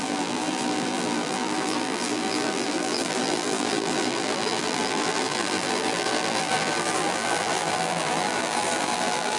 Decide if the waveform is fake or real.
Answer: fake